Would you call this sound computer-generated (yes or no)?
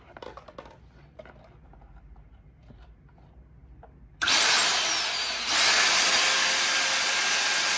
no